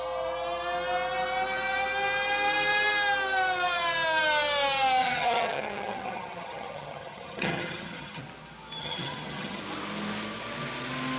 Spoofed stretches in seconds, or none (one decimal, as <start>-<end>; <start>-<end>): 5.0-8.2; 8.8-9.6